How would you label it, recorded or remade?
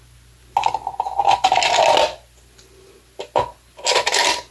recorded